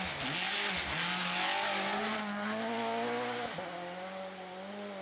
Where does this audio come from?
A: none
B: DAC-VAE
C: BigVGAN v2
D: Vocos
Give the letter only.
A